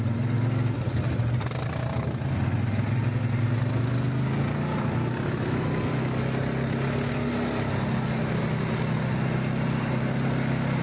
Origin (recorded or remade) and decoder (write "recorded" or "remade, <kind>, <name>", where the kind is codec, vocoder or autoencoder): recorded